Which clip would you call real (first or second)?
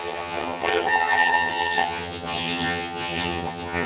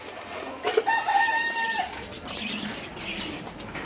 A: second